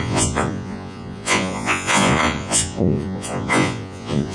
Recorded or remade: remade